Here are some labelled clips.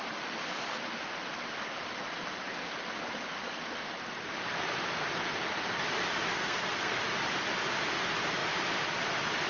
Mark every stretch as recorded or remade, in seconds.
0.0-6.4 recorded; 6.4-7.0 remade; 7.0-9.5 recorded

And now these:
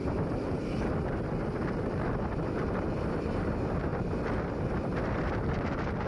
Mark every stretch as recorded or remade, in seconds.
0.0-6.1 recorded

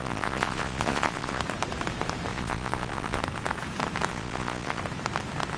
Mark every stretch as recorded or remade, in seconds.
0.0-1.4 remade; 1.4-2.3 recorded; 2.3-3.2 remade; 3.2-4.1 recorded; 4.1-4.8 remade; 4.8-5.6 recorded

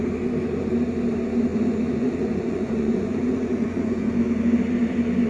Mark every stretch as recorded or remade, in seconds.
0.0-1.5 recorded; 1.5-4.1 remade; 4.1-5.3 recorded